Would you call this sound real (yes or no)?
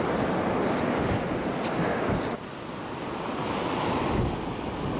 yes